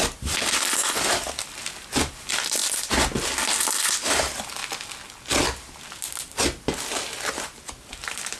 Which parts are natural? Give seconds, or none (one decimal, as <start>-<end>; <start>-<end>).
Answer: 2.6-3.6; 4.6-8.4